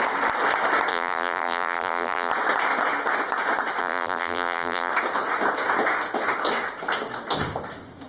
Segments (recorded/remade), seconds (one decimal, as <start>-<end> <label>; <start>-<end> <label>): 0.0-0.9 recorded; 0.9-2.3 remade; 2.3-3.8 recorded; 3.8-4.9 remade; 4.9-8.1 recorded